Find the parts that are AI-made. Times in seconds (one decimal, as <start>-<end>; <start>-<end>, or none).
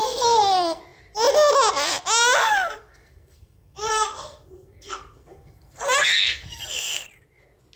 0.0-0.8; 2.4-7.1